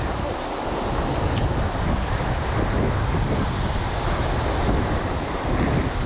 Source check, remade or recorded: recorded